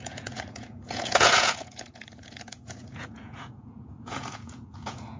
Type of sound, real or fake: fake